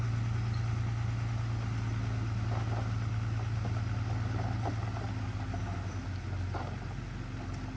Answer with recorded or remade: recorded